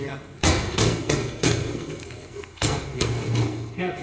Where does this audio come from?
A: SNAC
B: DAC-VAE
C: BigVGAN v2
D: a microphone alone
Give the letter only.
A